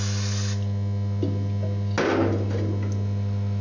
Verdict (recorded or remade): recorded